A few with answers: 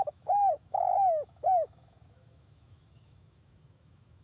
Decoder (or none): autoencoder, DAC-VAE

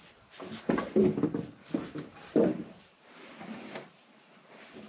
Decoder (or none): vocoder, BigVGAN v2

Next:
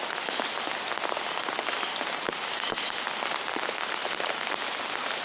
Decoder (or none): none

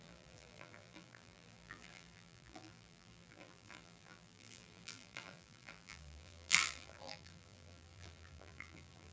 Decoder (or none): vocoder, BigVGAN v2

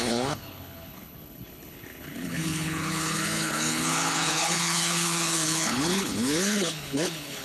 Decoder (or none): codec, HILCodec